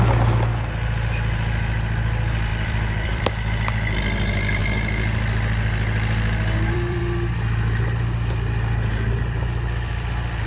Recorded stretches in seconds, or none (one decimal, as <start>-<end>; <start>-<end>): 0.0-2.5; 3.2-4.6; 7.0-10.5

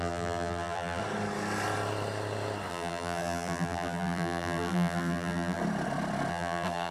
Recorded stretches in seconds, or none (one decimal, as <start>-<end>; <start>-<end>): 1.0-2.7; 5.6-6.3

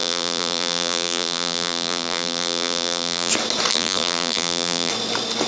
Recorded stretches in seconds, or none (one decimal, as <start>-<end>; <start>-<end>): 3.3-3.7; 4.9-5.5

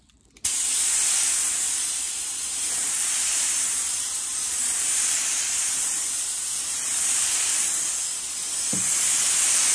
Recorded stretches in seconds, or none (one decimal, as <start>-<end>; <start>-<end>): 0.0-2.8; 7.7-9.7

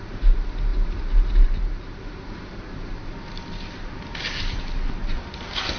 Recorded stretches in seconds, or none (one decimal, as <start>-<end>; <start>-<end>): 0.0-5.8

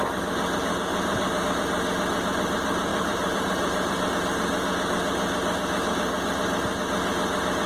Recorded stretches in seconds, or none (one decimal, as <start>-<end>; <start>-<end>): 0.0-0.9; 1.4-2.9; 4.1-7.7

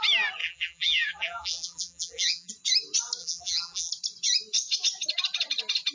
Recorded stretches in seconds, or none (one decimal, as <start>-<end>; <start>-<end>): 0.0-0.4; 2.5-3.2; 3.9-5.9